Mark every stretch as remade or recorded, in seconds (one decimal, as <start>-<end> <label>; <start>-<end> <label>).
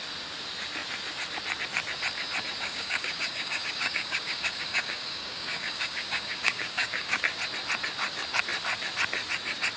0.0-2.6 recorded; 2.6-7.2 remade; 7.2-9.8 recorded